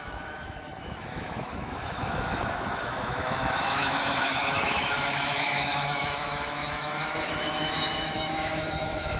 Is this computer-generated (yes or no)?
yes